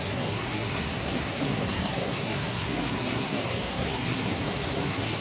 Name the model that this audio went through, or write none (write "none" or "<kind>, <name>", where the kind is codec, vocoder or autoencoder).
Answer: codec, SNAC